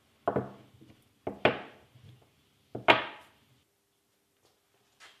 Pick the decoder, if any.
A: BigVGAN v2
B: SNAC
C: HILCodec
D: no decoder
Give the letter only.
D